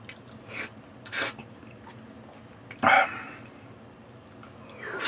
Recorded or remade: recorded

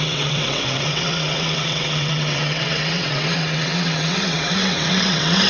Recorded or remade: remade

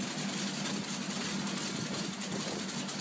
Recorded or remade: recorded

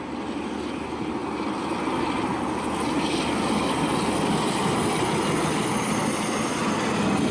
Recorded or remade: recorded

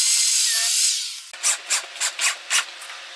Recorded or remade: recorded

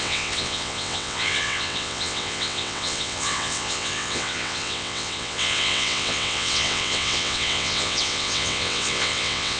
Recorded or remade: remade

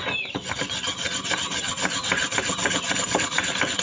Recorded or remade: recorded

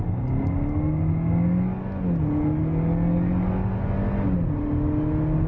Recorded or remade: recorded